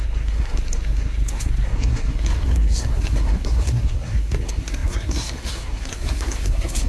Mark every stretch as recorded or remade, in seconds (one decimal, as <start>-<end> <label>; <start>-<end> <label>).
0.0-6.9 remade